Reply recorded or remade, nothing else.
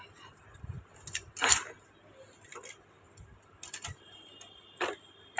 recorded